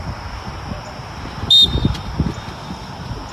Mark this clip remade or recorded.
recorded